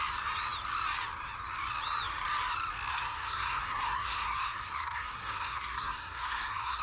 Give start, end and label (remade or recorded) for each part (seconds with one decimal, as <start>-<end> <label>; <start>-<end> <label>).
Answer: 0.0-2.9 recorded; 2.9-6.8 remade